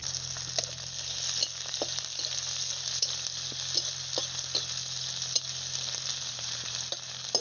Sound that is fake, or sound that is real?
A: real